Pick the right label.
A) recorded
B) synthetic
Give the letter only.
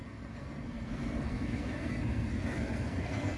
B